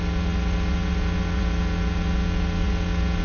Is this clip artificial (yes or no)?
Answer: yes